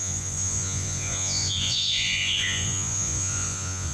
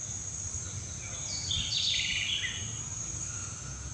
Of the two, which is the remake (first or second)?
first